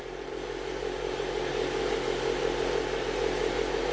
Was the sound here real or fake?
fake